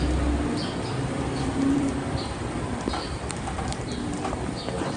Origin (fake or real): fake